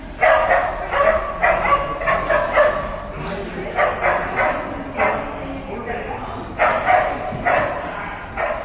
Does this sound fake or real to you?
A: real